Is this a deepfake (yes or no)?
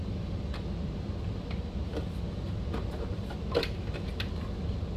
no